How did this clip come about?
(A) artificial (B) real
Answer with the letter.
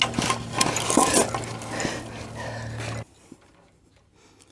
B